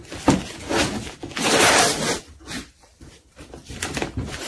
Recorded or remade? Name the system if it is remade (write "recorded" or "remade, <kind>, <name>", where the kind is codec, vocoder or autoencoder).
recorded